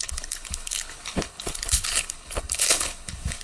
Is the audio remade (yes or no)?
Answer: yes